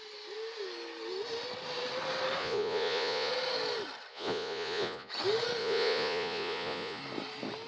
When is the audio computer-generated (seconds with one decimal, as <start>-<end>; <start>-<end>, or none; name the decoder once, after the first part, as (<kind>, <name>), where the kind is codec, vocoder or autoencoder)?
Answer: 2.4-3.3 (vocoder, Vocos); 4.1-5.1; 5.6-7.0